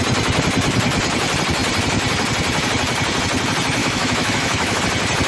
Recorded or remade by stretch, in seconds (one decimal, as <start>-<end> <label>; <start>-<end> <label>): 0.0-3.8 recorded; 3.8-4.8 remade; 4.8-5.3 recorded